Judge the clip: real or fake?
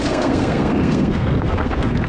fake